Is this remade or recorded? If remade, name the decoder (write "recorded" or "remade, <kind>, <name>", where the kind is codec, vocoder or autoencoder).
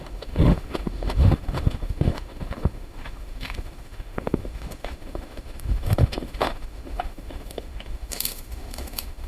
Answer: remade, autoencoder, DAC-VAE